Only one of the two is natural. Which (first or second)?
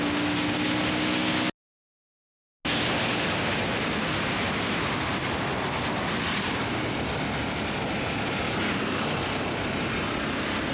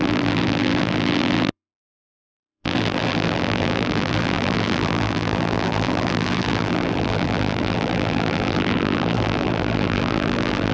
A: first